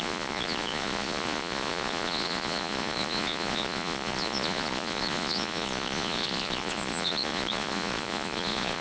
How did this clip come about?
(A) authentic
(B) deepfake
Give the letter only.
B